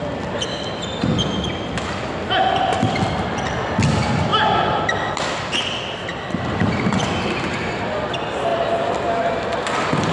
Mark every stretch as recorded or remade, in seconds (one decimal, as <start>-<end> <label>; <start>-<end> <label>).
0.0-10.1 recorded